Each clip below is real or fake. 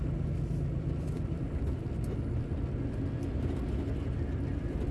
real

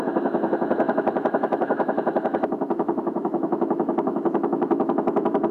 fake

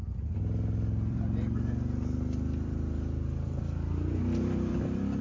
fake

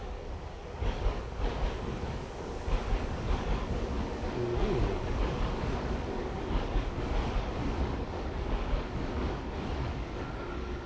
fake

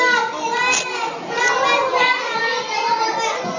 real